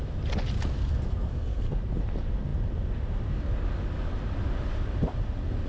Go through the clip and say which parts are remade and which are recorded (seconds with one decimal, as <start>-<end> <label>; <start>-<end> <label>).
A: 0.0-0.8 recorded; 0.8-1.8 remade; 1.8-5.7 recorded